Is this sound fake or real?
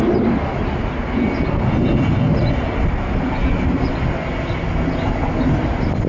real